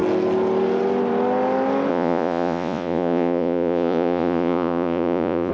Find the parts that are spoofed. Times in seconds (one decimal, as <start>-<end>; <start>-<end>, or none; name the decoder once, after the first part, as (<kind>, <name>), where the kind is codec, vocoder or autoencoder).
1.9-5.5 (vocoder, Vocos)